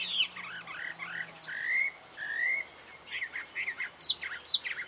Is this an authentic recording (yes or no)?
yes